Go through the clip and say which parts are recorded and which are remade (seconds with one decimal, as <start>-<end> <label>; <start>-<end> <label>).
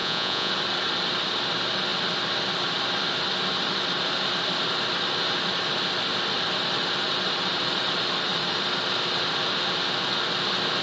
0.0-0.5 remade; 0.5-10.8 recorded